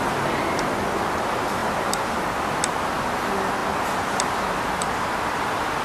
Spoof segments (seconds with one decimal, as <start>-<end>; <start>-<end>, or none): 1.6-2.4